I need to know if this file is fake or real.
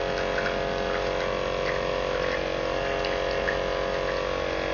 real